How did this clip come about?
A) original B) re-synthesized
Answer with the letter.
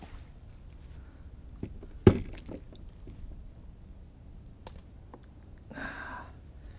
A